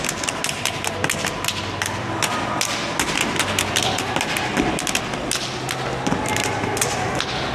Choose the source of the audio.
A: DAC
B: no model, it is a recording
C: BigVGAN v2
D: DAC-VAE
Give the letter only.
B